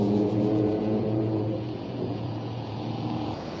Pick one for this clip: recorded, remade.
remade